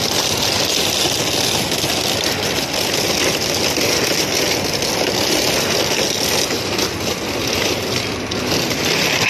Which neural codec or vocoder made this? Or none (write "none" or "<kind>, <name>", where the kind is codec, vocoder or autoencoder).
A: none